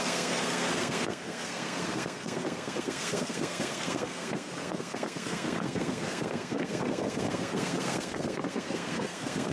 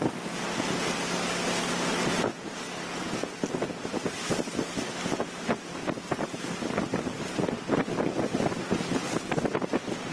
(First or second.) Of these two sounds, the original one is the second